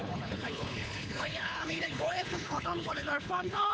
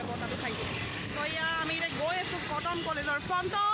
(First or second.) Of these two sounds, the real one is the second